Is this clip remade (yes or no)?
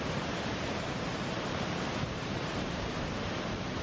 yes